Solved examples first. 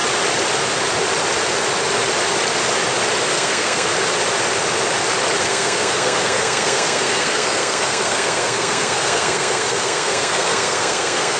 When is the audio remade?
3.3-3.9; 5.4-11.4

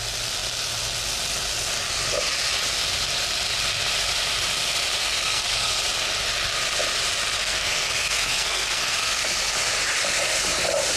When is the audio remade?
5.0-5.8; 7.4-9.2

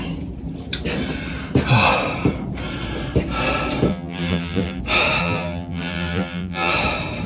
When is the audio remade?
3.9-4.8; 5.2-6.7

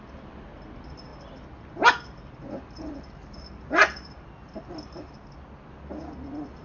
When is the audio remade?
none

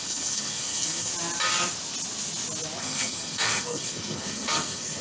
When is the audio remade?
0.0-1.1; 2.8-5.0

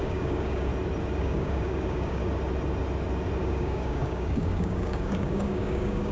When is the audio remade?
0.0-0.7; 1.2-2.2; 3.4-6.1